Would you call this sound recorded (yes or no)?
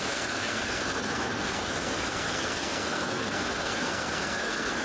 no